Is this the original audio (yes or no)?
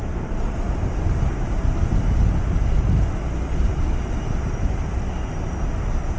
yes